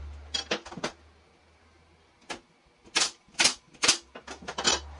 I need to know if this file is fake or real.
real